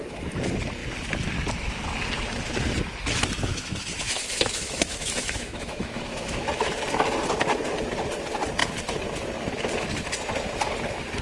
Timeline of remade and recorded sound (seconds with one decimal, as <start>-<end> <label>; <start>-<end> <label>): 0.0-3.5 recorded; 3.5-6.8 remade; 6.8-11.2 recorded